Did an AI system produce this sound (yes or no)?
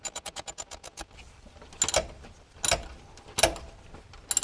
no